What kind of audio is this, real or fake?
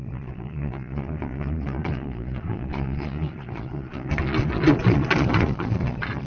fake